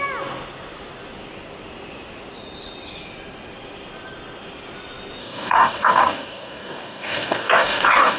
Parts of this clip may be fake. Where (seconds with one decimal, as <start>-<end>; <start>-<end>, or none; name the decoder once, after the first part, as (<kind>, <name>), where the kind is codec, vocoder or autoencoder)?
5.2-8.2 (codec, DAC)